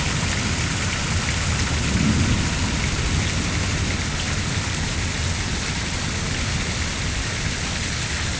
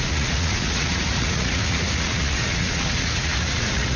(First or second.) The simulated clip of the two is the second